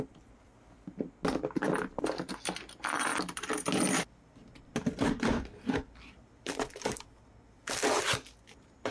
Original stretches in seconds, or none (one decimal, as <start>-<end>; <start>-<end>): 0.0-8.9